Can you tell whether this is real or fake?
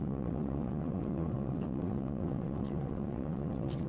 fake